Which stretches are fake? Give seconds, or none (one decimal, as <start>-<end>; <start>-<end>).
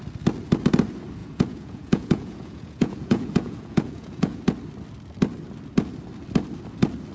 1.2-4.4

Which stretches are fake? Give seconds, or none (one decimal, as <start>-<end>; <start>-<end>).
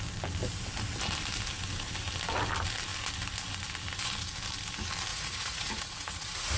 5.1-6.6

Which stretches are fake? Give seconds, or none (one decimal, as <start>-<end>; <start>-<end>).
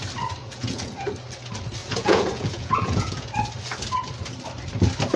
0.4-1.1; 1.8-3.3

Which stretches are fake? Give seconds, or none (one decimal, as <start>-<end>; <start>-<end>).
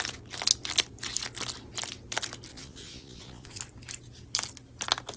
2.5-3.6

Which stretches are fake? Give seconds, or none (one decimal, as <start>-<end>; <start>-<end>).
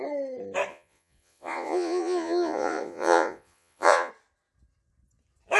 0.7-4.1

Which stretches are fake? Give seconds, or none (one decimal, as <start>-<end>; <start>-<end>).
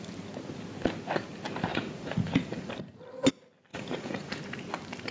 1.7-2.7; 3.7-4.4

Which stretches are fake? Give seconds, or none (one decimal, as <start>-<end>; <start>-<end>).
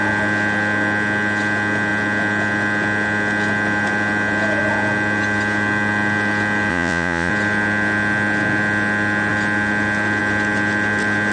6.7-7.3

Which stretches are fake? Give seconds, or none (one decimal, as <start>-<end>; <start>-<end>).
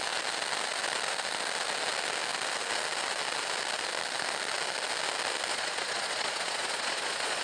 5.5-7.4